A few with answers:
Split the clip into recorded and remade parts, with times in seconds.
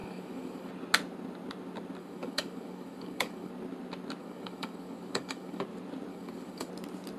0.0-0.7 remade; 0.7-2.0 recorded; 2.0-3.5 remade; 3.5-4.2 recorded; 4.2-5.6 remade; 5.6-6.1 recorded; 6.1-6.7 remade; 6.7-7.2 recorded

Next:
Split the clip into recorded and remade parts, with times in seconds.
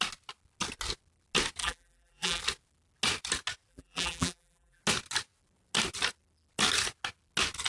0.0-1.6 recorded; 1.6-2.4 remade; 2.4-3.7 recorded; 3.7-4.8 remade; 4.8-7.7 recorded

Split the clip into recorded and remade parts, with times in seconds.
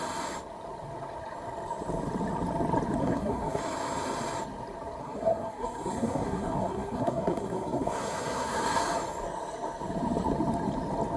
0.0-3.0 recorded; 3.0-3.6 remade; 3.6-5.0 recorded; 5.0-8.8 remade; 8.8-11.2 recorded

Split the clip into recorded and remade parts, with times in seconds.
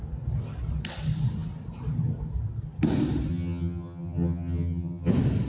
0.0-3.3 recorded; 3.3-5.1 remade; 5.1-5.5 recorded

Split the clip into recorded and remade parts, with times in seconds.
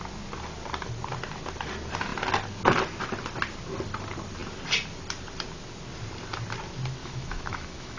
0.0-7.0 recorded; 7.0-8.0 remade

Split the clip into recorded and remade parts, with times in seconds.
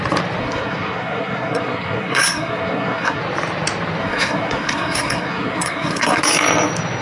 0.0-0.4 recorded; 0.4-3.2 remade; 3.2-4.0 recorded; 4.0-6.2 remade; 6.2-7.0 recorded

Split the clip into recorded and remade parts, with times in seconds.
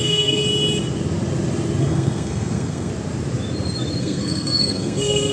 0.0-0.4 remade; 0.4-1.8 recorded; 1.8-2.9 remade; 2.9-4.0 recorded; 4.0-5.3 remade